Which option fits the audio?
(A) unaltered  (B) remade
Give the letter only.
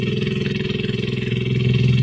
B